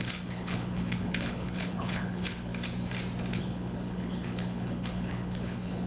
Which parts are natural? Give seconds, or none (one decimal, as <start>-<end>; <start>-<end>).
2.5-3.3